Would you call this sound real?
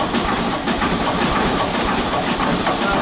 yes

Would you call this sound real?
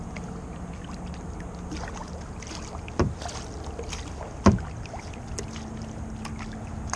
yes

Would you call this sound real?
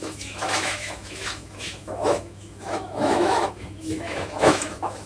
no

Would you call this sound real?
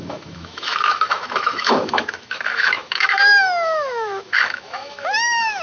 no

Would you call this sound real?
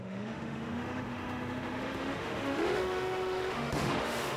no